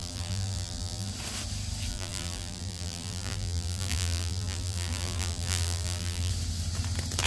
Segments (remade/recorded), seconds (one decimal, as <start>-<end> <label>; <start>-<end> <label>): 0.0-1.1 remade; 1.1-1.9 recorded; 1.9-6.3 remade; 6.3-7.3 recorded